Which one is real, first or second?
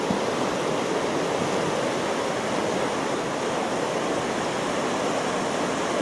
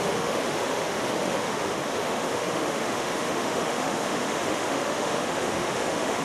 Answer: first